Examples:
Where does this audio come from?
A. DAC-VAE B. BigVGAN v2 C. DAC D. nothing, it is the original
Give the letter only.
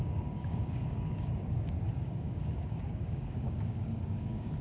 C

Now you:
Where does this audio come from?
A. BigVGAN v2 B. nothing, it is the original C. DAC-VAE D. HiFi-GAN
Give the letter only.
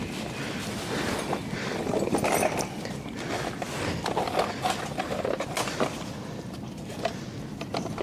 B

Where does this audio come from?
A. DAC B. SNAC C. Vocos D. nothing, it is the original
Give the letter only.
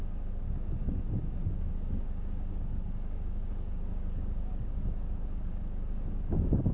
A